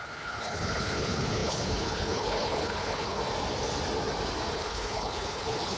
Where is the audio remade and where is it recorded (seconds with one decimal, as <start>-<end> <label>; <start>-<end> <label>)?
0.0-3.2 remade; 3.2-4.5 recorded; 4.5-5.8 remade